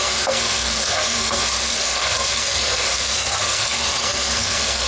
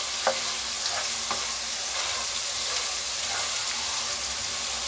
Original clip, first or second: second